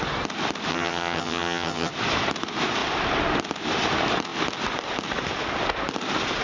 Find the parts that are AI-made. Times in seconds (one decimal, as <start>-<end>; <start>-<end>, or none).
0.7-1.9